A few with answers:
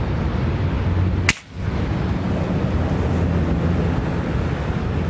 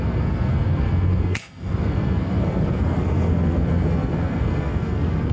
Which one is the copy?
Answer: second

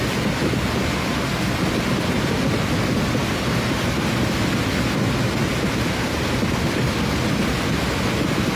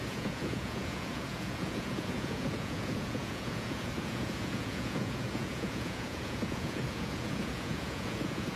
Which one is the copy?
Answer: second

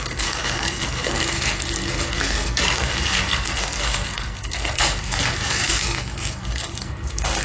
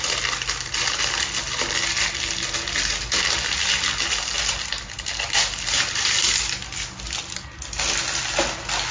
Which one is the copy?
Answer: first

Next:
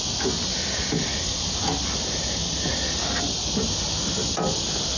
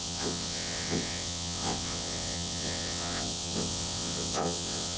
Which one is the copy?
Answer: second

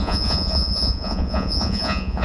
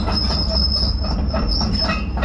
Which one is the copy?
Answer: first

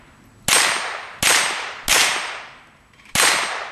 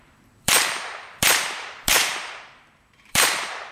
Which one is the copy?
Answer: second